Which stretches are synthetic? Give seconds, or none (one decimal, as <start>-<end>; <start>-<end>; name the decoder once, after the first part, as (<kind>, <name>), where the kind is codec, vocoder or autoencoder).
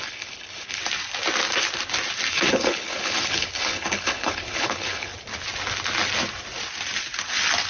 0.0-0.8 (codec, HILCodec); 2.3-5.1